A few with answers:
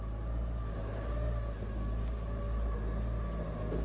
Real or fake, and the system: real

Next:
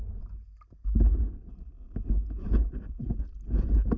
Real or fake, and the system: real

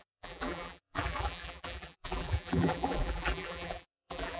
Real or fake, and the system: fake, vocoder, BigVGAN v2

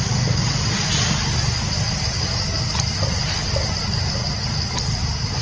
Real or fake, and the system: real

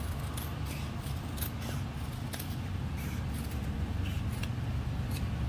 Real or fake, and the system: real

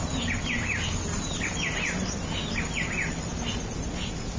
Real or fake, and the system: real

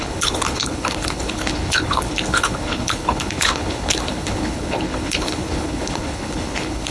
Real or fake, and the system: fake, codec, HILCodec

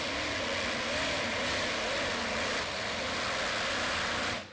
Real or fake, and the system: real